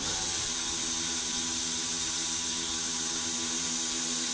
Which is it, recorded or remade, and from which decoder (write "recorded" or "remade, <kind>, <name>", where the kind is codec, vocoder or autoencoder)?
remade, vocoder, BigVGAN v2